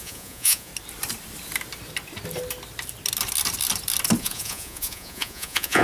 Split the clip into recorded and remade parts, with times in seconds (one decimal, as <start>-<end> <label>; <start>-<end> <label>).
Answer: 0.0-0.7 remade; 0.7-4.2 recorded; 4.2-5.8 remade